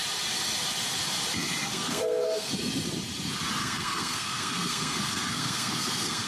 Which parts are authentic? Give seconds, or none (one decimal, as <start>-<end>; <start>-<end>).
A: 0.0-1.7; 2.5-3.6